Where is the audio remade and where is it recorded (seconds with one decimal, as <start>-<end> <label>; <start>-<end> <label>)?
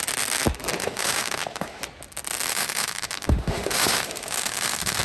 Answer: 0.0-0.8 recorded; 0.8-1.8 remade; 1.8-2.5 recorded; 2.5-5.0 remade